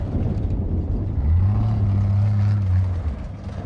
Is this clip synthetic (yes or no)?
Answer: no